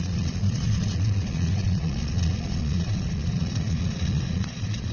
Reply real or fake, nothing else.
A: fake